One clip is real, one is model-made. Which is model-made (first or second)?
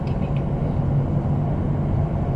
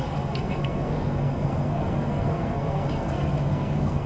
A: second